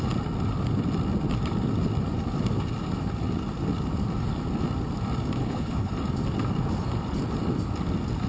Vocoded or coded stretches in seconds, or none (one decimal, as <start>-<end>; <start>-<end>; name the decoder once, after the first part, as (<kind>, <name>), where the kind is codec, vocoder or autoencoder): 5.4-5.9 (codec, HILCodec)